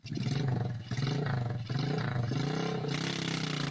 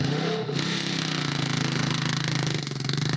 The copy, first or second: second